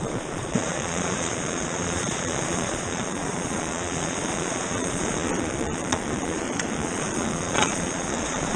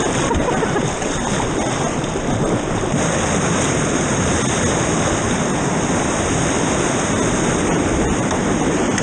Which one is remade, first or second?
first